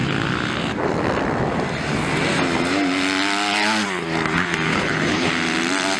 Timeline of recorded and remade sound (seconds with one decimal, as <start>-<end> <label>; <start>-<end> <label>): 0.0-4.7 recorded; 4.7-5.3 remade; 5.3-6.0 recorded